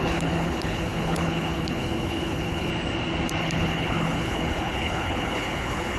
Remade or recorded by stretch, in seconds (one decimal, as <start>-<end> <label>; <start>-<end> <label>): 0.0-2.7 remade; 2.7-3.4 recorded; 3.4-6.0 remade